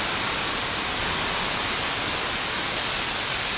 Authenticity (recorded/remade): recorded